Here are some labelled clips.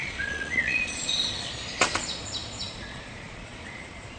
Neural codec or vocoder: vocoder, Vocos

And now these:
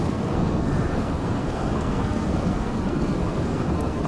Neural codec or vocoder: codec, SNAC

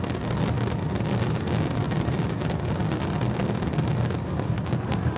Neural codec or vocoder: none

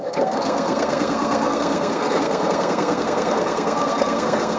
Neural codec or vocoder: codec, SNAC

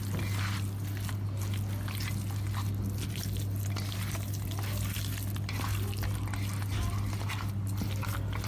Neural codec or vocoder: none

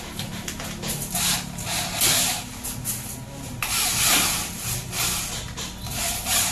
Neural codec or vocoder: none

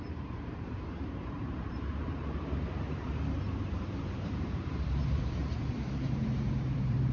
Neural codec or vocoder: vocoder, BigVGAN v2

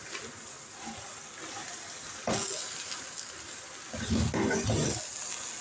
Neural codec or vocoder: none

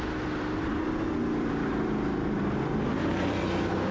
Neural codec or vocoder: vocoder, BigVGAN v2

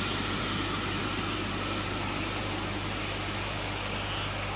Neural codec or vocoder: none